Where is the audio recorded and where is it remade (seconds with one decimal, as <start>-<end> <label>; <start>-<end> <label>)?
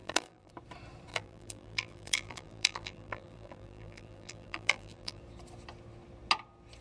0.0-0.5 remade; 0.5-1.1 recorded; 1.1-5.2 remade; 5.2-6.8 recorded